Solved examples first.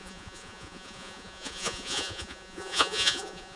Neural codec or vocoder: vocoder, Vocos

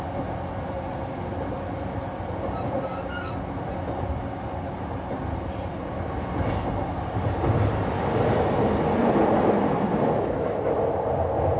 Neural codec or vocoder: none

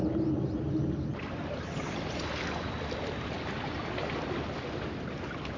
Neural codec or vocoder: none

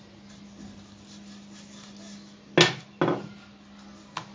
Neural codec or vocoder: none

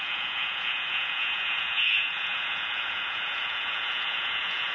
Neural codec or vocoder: vocoder, Vocos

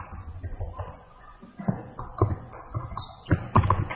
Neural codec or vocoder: vocoder, Vocos